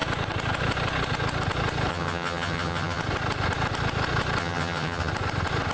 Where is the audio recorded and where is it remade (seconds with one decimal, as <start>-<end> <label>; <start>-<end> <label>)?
0.0-1.9 recorded; 1.9-3.0 remade; 3.0-4.4 recorded; 4.4-5.1 remade; 5.1-5.7 recorded